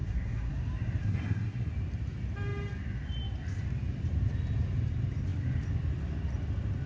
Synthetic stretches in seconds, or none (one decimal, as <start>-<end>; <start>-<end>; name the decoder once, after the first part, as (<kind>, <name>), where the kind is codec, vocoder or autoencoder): 0.0-0.5 (codec, SNAC); 1.0-1.7